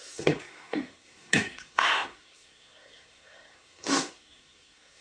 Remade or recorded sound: remade